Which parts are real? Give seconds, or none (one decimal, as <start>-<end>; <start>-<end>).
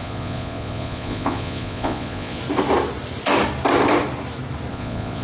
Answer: 2.4-4.7